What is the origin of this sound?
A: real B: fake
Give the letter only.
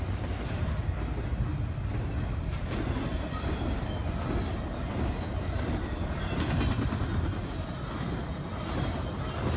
A